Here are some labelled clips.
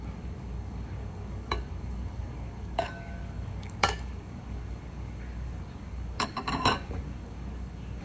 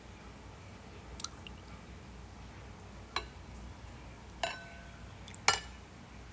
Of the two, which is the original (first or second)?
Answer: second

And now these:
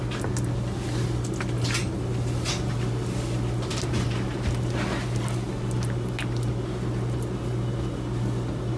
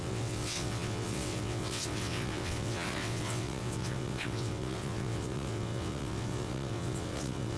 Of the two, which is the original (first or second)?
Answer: first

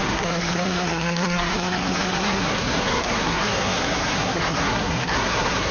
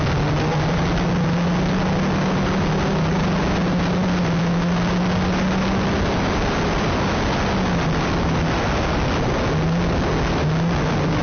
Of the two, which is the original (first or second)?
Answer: second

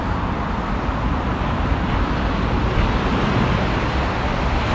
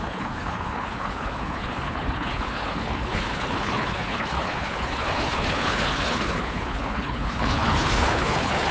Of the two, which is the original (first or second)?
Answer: first